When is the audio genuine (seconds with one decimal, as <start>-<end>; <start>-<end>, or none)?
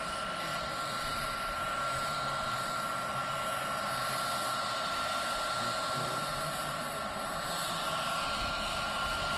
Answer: 0.0-0.5; 1.4-9.4